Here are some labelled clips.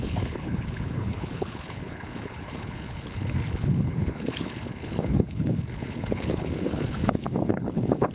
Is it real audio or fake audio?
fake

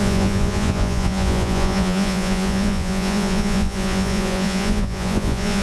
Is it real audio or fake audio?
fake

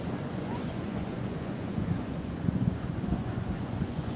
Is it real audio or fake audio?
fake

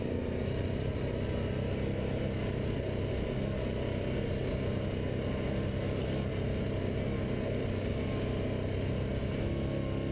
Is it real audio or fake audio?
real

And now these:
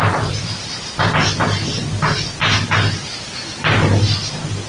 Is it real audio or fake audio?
real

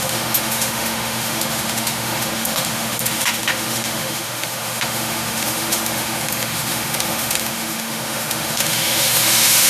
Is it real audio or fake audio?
fake